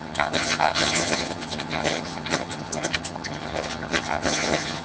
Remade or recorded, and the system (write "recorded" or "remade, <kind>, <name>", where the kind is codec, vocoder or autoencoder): remade, vocoder, HiFi-GAN